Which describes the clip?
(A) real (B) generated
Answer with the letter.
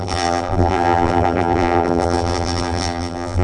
B